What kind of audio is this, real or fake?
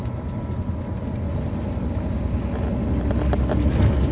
real